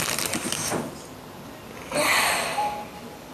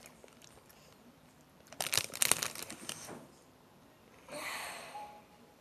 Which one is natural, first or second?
first